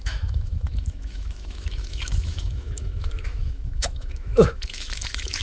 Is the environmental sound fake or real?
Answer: fake